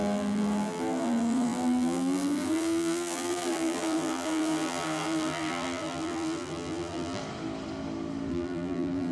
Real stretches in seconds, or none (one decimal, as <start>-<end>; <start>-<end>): 7.2-8.3